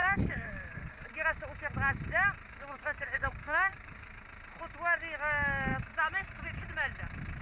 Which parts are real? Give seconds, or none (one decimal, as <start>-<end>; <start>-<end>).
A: 1.1-2.4; 4.2-7.4